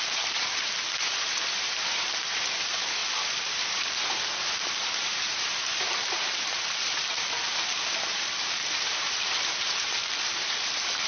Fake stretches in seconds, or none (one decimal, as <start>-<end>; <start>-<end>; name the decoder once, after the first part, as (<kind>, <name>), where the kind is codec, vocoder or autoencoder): 0.0-3.0 (vocoder, BigVGAN v2); 3.6-11.1